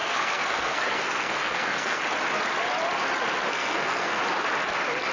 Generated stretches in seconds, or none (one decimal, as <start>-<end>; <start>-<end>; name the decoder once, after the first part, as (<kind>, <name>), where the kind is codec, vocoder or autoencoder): 0.0-2.0 (codec, SNAC); 3.5-4.2